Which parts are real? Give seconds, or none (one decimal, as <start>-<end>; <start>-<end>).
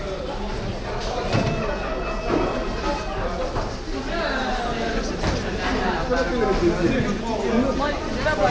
0.0-8.5